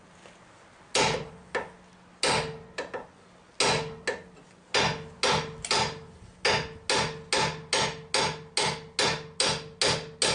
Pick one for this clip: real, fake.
real